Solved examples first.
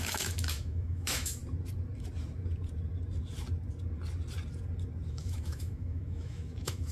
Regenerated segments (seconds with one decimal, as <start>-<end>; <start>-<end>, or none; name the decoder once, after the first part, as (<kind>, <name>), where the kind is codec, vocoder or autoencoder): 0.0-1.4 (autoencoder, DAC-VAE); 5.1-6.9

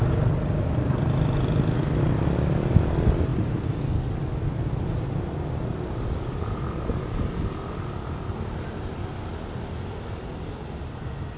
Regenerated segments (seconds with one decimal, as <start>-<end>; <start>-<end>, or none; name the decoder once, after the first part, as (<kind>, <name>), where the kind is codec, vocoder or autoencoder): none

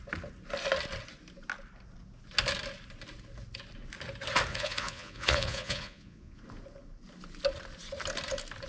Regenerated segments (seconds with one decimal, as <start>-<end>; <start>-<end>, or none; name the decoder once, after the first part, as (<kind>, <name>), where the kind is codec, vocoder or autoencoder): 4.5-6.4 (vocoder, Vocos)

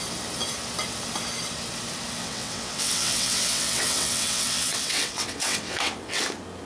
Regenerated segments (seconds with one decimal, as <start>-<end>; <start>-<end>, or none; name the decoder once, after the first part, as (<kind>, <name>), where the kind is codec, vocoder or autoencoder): 2.2-6.2 (vocoder, WaveNeXt)

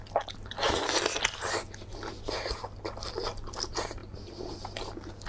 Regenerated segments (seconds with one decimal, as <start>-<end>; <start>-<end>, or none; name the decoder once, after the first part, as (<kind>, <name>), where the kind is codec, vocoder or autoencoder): none

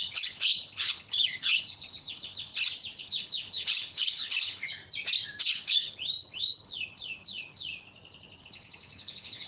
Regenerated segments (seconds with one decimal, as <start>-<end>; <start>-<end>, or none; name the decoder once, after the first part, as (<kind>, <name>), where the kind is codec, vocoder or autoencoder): 0.0-2.5 (codec, HILCodec); 3.0-4.8; 5.4-7.7; 8.4-9.5